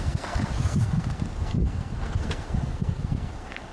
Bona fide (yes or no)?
no